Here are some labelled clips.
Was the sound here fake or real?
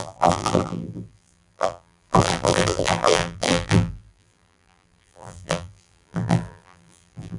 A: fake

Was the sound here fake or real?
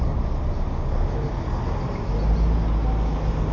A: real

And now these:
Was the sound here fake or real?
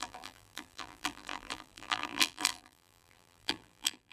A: fake